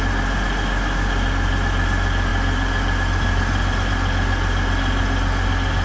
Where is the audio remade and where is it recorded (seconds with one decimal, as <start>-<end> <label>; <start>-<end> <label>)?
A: 0.0-5.8 recorded